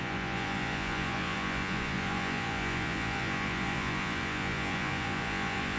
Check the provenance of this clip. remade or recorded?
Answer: remade